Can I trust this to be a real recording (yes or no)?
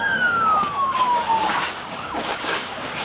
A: no